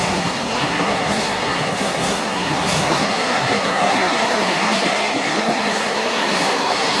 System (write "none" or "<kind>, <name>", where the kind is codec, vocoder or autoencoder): codec, SNAC